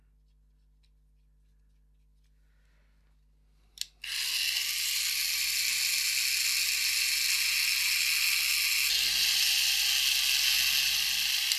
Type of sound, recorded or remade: recorded